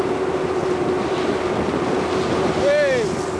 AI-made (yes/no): no